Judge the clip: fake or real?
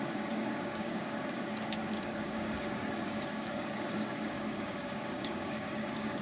fake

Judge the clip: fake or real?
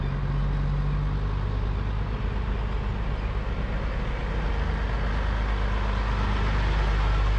real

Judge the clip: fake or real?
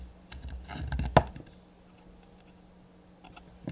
real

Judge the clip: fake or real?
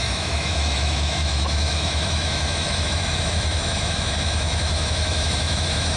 fake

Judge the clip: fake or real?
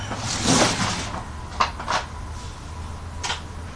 real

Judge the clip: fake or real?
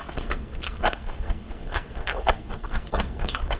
fake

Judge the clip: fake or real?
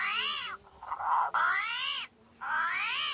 real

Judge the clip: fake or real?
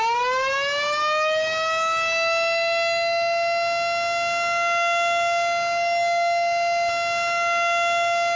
real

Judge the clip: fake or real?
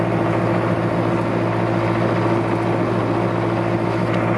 real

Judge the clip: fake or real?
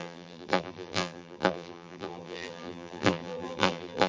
fake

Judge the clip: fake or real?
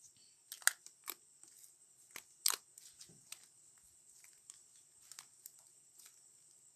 real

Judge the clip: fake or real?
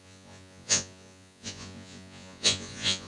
fake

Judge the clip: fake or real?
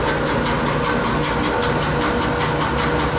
real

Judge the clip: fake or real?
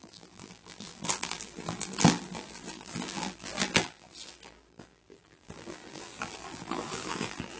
fake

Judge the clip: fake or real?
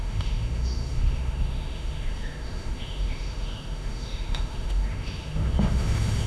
fake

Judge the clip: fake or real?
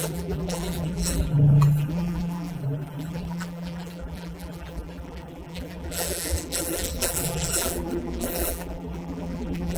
fake